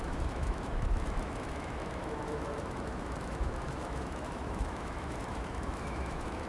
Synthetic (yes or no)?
yes